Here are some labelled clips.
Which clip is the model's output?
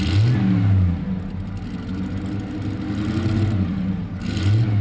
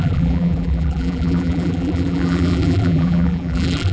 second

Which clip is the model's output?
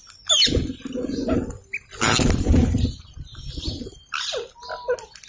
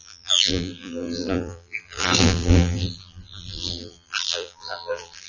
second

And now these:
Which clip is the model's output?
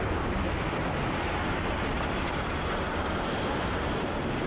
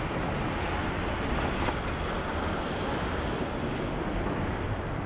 first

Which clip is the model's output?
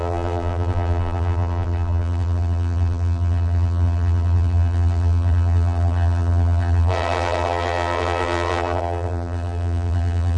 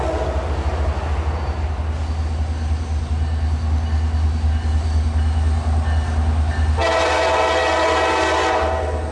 first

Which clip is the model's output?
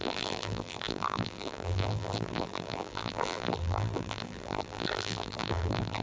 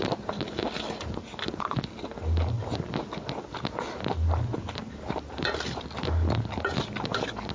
first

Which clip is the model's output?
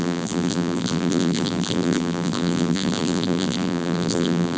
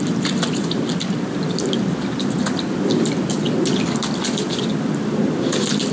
first